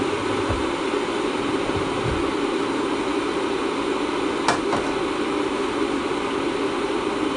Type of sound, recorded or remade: recorded